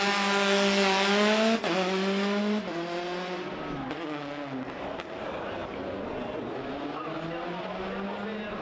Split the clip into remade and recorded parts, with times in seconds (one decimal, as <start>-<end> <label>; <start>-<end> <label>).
0.0-8.6 recorded